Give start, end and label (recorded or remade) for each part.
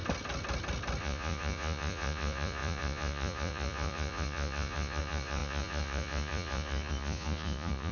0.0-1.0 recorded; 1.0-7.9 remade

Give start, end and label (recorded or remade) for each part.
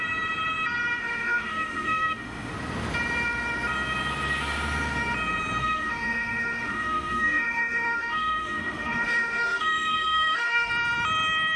0.0-1.0 recorded; 1.0-2.5 remade; 2.5-5.6 recorded; 5.6-10.7 remade; 10.7-11.6 recorded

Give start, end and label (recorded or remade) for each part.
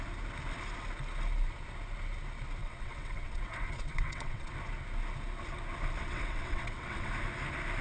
0.0-2.6 recorded; 2.6-4.5 remade; 4.5-6.0 recorded; 6.0-7.1 remade; 7.1-7.8 recorded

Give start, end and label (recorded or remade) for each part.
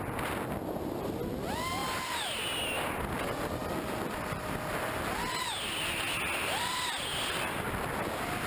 0.0-8.5 recorded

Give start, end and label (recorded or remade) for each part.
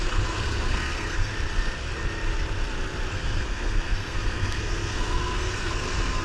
0.0-1.3 remade; 1.3-3.1 recorded; 3.1-6.2 remade